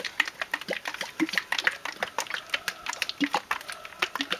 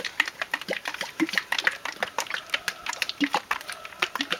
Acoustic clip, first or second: first